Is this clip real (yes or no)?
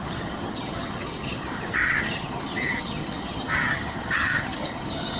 no